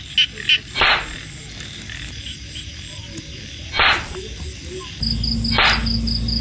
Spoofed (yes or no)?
no